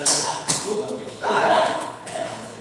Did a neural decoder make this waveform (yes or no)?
yes